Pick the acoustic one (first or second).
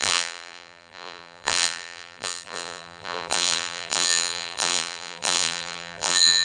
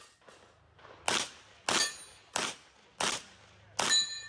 second